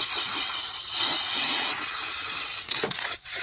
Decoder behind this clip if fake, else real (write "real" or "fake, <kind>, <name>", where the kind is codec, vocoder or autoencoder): fake, vocoder, WaveNeXt